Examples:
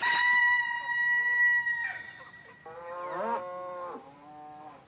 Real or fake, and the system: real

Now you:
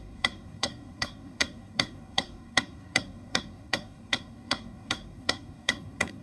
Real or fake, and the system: fake, codec, SNAC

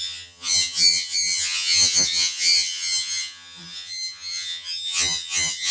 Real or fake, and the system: fake, vocoder, HiFi-GAN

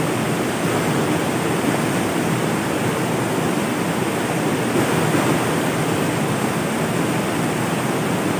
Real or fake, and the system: real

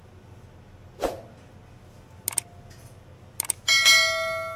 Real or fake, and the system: real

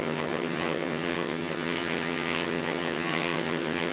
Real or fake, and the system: fake, vocoder, HiFi-GAN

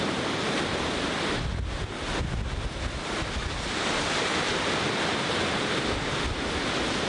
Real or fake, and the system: real